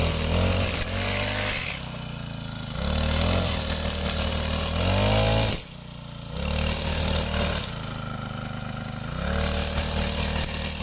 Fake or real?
real